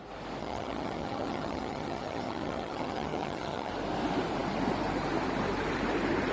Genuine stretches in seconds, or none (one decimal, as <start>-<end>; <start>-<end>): 0.0-0.4; 3.7-6.3